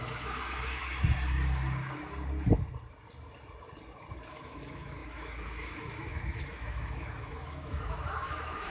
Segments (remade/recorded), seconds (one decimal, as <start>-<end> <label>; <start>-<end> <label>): 0.0-0.8 remade; 0.8-4.3 recorded; 4.3-8.7 remade